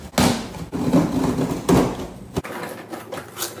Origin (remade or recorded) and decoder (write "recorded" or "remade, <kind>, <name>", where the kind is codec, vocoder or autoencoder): recorded